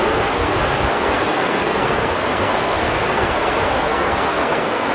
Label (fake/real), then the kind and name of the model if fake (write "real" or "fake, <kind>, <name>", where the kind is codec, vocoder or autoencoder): fake, codec, SNAC